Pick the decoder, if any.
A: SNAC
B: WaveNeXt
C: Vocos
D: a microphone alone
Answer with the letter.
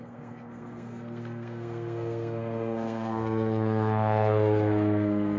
A